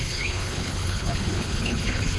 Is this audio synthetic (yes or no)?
yes